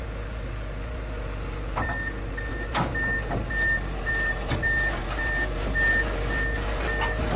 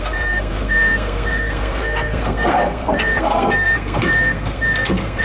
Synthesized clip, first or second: second